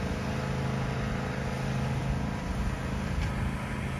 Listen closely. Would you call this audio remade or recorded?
recorded